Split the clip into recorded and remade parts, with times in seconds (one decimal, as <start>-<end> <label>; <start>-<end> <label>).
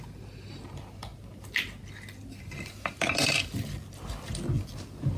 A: 0.0-5.2 recorded